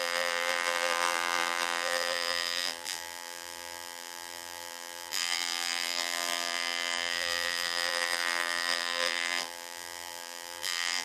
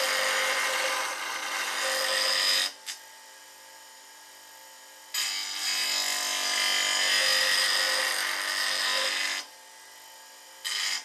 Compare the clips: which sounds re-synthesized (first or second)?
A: first